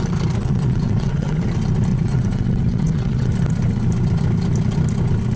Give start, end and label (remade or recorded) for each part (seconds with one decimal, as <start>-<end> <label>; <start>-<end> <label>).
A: 0.0-0.4 recorded; 0.4-1.4 remade; 1.4-1.9 recorded; 1.9-3.3 remade; 3.3-5.4 recorded